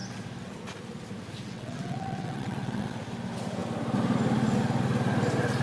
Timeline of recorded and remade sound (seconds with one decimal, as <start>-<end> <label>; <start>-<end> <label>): 0.0-1.4 recorded; 1.4-3.0 remade; 3.0-5.6 recorded